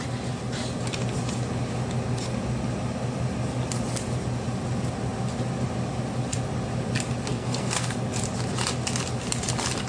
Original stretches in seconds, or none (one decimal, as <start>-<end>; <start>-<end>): 0.0-7.3; 7.9-9.9